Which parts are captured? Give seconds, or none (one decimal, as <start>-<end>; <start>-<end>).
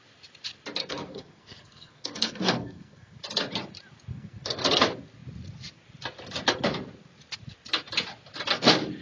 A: 0.0-0.8; 3.2-4.1; 4.8-9.0